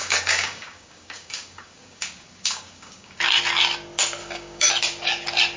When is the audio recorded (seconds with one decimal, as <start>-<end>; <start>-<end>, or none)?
3.2-4.2; 4.7-5.6